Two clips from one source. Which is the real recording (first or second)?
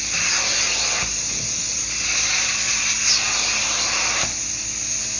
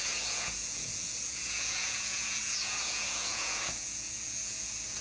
first